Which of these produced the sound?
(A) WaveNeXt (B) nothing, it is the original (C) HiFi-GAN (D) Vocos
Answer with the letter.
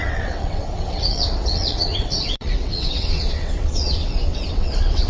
A